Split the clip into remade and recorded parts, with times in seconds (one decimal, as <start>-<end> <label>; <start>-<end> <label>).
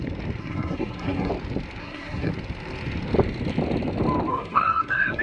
0.0-0.4 recorded; 0.4-1.3 remade; 1.3-1.8 recorded; 1.8-2.3 remade; 2.3-4.3 recorded; 4.3-5.2 remade